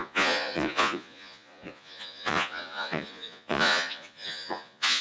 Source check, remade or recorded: remade